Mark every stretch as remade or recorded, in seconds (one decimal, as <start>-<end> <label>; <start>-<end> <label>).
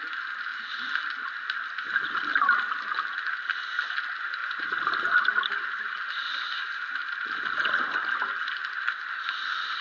0.0-4.4 recorded; 4.4-5.6 remade; 5.6-9.8 recorded